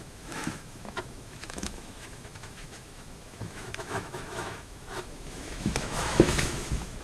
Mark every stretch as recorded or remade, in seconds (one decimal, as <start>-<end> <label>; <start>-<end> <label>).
0.0-7.0 remade